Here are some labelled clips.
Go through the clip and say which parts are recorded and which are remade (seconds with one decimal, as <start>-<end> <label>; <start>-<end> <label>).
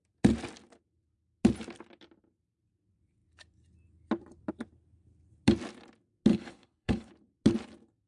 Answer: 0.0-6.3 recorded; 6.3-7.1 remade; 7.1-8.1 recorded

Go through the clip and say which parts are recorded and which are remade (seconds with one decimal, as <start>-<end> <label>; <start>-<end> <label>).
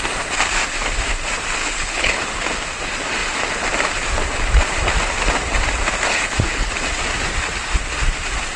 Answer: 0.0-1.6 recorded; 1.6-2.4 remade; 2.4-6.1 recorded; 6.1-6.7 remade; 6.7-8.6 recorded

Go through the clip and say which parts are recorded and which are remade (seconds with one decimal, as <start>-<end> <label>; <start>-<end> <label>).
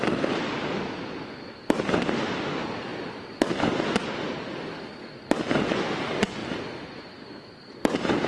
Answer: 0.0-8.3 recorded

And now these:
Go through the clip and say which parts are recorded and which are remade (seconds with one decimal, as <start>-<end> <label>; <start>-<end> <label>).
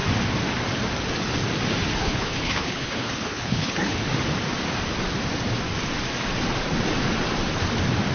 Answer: 0.0-2.0 recorded; 2.0-4.0 remade; 4.0-8.1 recorded